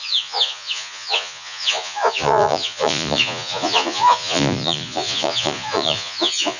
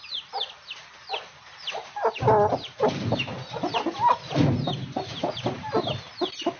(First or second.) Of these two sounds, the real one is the second